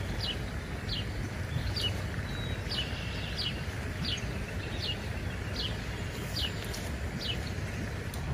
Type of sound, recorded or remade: recorded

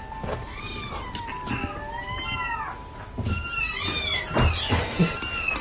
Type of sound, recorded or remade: recorded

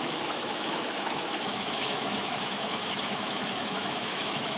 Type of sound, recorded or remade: remade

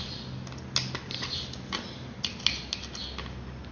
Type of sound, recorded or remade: recorded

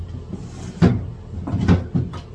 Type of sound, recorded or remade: recorded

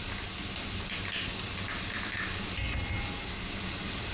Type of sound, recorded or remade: recorded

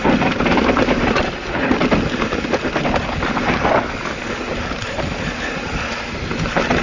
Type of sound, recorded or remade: recorded